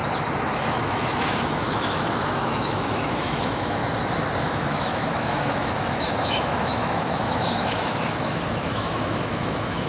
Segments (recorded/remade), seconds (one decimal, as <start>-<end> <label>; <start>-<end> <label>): 0.0-0.7 recorded; 0.7-3.8 remade; 3.8-4.4 recorded; 4.4-9.9 remade